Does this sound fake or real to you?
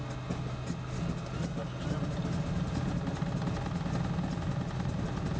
real